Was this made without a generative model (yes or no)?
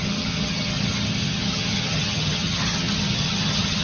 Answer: no